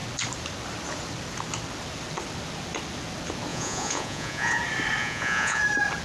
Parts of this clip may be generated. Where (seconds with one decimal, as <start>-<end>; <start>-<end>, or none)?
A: 3.5-4.6; 5.0-5.6